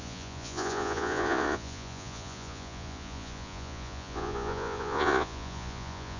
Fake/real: fake